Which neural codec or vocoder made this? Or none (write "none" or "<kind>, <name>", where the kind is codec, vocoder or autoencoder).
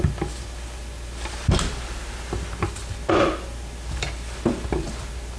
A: none